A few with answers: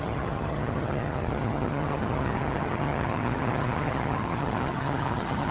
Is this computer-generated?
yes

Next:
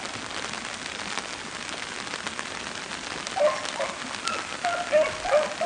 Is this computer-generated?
no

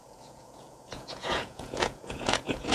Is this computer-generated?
yes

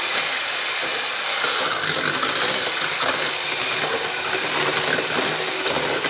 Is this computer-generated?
no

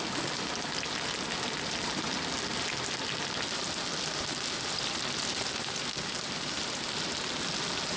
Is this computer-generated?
no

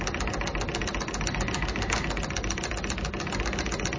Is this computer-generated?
no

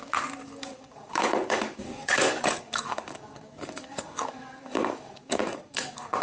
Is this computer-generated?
yes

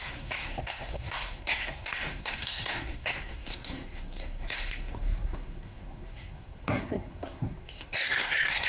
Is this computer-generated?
yes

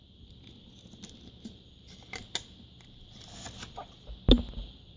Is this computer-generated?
no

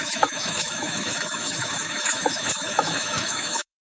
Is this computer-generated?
yes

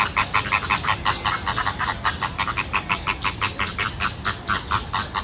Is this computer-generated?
no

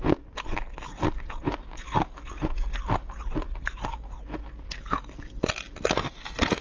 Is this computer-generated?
no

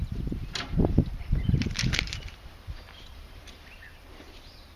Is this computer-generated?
yes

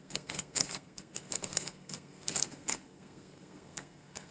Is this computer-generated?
yes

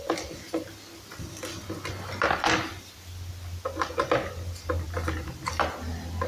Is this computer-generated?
no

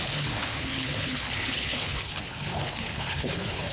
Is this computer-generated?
yes